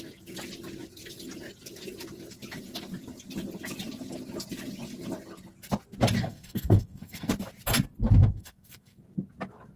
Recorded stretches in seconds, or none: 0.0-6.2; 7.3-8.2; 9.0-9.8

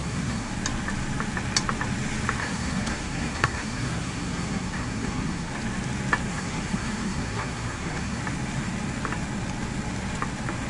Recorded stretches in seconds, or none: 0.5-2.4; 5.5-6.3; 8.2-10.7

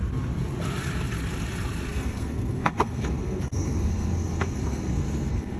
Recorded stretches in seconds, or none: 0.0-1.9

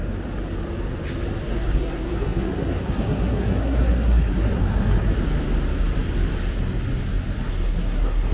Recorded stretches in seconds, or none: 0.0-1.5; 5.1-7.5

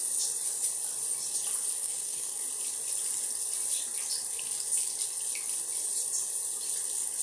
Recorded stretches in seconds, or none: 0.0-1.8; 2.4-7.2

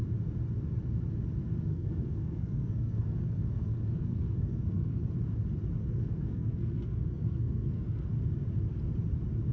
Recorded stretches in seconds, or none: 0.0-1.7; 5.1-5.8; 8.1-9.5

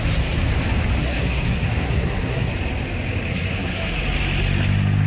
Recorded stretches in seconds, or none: 0.0-1.0; 2.5-3.3; 4.0-5.1